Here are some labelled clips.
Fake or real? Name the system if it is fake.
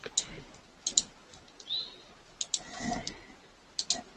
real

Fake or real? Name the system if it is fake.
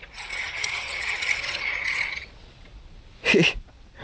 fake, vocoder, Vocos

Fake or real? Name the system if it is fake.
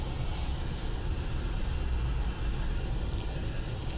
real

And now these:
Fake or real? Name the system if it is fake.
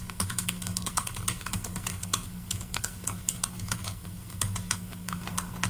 fake, codec, SNAC